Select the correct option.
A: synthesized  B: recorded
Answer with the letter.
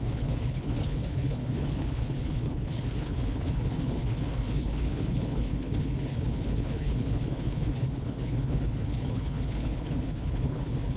A